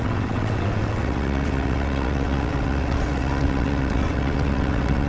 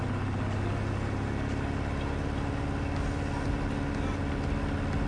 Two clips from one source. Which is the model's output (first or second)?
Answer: first